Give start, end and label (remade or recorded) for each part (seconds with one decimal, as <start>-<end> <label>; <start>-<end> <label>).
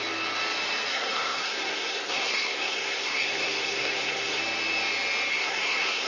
0.0-0.9 recorded; 0.9-4.4 remade; 4.4-5.3 recorded; 5.3-6.1 remade